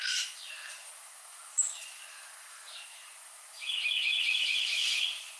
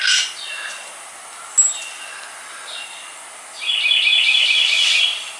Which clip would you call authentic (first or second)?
second